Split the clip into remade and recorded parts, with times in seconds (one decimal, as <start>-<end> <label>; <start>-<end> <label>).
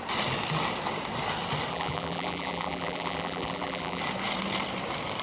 0.0-1.7 recorded; 1.7-4.0 remade; 4.0-5.2 recorded